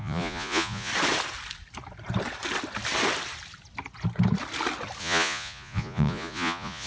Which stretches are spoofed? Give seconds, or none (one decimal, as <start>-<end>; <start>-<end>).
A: 0.0-0.9; 5.0-6.9